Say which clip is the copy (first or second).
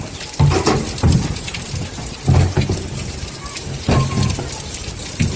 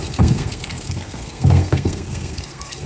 second